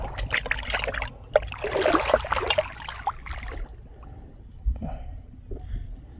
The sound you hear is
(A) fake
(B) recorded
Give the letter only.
B